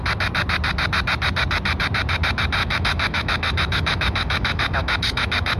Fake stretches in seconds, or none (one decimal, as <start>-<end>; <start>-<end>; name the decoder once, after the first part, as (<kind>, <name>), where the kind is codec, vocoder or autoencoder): 2.6-5.6 (autoencoder, DAC-VAE)